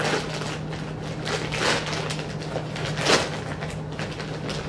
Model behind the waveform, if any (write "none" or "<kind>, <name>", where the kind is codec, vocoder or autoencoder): none